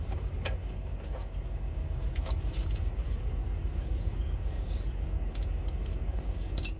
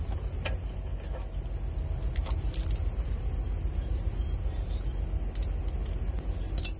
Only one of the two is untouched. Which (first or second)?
second